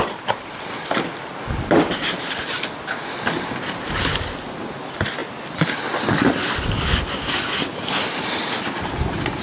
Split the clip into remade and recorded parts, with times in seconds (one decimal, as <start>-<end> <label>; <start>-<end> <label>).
0.0-9.4 recorded